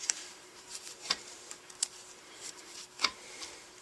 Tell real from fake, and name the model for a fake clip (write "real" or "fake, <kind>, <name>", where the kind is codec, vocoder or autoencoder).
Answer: fake, vocoder, BigVGAN v2